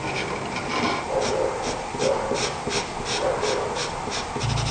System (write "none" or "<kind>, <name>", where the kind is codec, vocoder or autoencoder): none